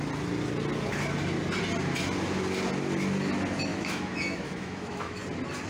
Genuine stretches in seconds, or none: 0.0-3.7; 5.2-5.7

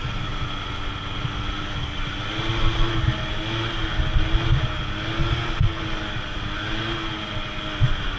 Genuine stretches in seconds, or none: 0.0-8.2